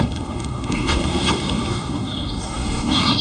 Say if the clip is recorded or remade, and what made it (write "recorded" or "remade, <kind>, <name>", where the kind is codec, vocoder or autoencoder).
remade, codec, SNAC